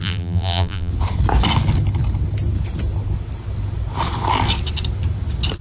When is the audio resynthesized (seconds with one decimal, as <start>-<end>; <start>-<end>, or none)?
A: 0.0-0.9